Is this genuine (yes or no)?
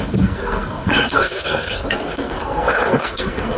no